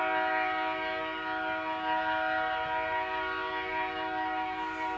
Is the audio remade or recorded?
recorded